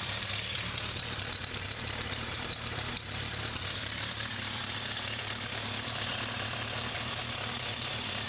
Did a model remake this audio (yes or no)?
yes